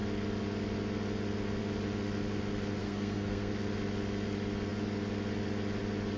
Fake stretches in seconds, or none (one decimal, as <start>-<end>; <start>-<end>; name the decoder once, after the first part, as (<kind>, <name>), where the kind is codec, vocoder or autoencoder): 2.8-3.5 (codec, SNAC)